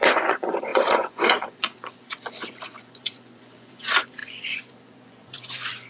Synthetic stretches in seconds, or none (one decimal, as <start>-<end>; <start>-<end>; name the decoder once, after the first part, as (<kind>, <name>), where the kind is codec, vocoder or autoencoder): 0.0-5.9 (vocoder, Vocos)